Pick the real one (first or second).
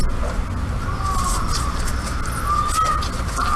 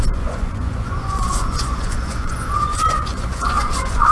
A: first